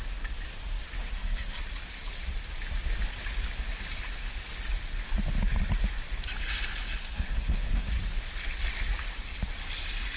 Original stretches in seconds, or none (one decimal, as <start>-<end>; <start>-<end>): 0.0-1.0; 1.6-7.0; 7.9-10.2